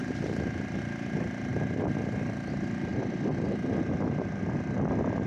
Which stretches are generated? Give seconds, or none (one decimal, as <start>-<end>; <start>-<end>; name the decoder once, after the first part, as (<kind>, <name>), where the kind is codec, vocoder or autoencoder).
0.0-0.8 (vocoder, BigVGAN v2); 2.9-3.8